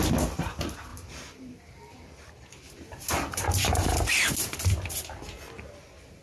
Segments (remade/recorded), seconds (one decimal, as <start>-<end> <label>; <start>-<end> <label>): 0.0-0.9 recorded; 0.9-3.1 remade; 3.1-6.2 recorded